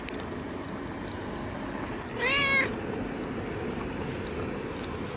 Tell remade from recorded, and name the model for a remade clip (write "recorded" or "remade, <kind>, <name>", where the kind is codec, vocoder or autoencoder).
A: recorded